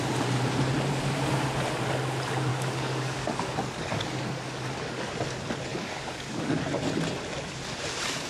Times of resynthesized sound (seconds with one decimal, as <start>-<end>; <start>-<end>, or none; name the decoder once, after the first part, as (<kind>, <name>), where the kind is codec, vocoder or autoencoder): 2.5-5.1 (codec, DAC); 5.7-6.6